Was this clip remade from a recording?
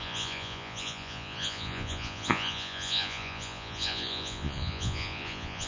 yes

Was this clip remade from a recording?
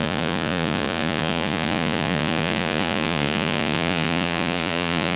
yes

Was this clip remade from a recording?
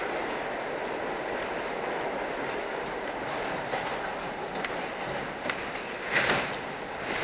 no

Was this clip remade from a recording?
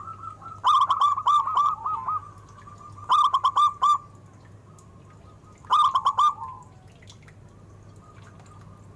no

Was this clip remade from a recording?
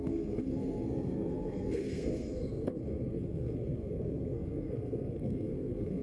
yes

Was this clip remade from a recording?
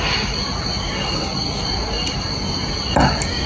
no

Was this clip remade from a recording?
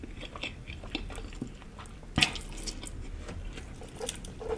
no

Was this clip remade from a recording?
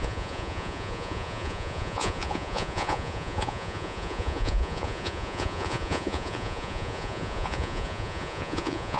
yes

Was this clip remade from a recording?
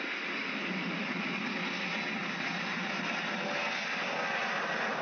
no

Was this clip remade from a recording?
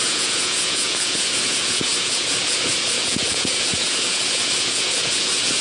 yes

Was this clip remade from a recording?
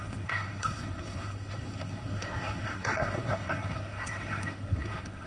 yes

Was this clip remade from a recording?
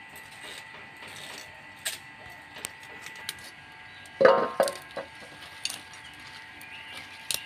no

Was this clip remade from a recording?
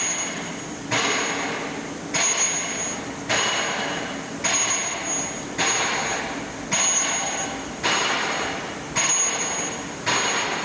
no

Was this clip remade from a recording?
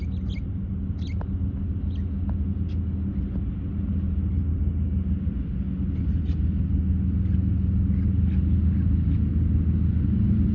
no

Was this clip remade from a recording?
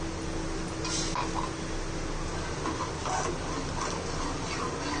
no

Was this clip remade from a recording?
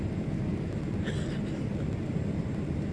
no